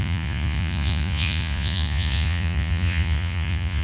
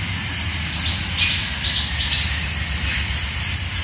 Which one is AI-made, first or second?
first